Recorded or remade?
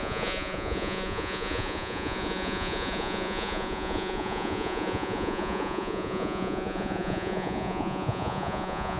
remade